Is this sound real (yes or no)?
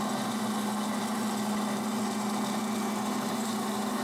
yes